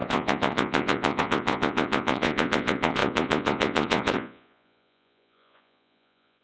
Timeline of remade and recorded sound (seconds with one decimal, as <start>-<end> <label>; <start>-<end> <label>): 0.0-6.4 remade